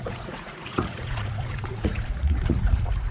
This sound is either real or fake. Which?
fake